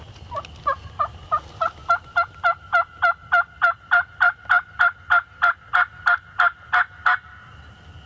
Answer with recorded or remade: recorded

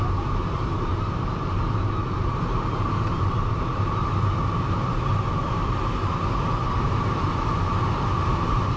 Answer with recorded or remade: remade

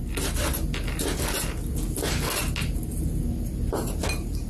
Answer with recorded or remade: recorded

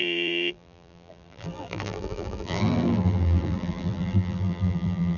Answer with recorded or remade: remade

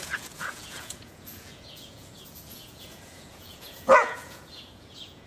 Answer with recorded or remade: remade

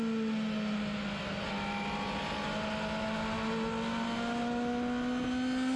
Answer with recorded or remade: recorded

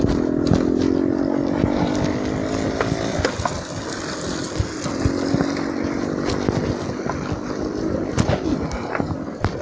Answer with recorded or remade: recorded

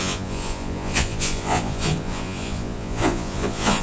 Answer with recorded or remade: remade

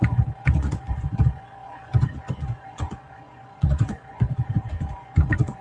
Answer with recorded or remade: remade